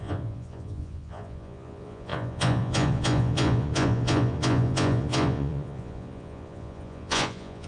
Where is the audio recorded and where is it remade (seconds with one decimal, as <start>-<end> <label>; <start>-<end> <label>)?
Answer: 0.0-7.7 remade